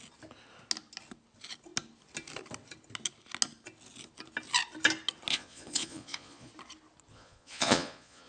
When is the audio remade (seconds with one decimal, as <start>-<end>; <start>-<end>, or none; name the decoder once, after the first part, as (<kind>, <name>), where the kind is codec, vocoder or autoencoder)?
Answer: 5.3-6.5 (vocoder, Vocos); 7.1-8.3